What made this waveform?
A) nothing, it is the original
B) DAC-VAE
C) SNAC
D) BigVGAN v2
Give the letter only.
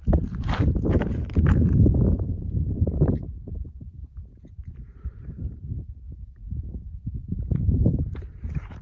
D